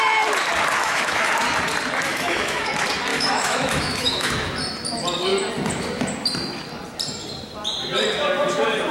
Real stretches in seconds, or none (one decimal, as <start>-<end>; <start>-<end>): 0.0-0.8; 1.3-2.1; 2.7-3.1; 4.5-8.9